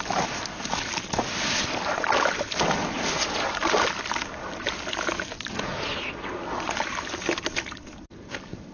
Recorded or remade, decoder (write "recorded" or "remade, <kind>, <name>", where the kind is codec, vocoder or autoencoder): recorded